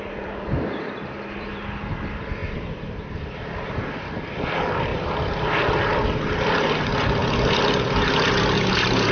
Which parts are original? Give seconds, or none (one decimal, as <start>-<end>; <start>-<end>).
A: 4.9-6.4; 7.2-7.8